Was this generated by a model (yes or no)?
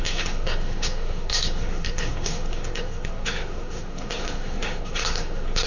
yes